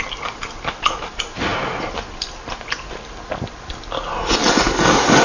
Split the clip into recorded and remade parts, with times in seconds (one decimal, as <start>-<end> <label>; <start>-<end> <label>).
0.0-5.2 recorded